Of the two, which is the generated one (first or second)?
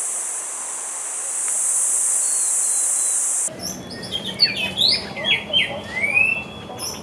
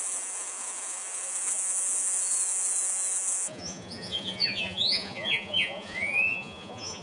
second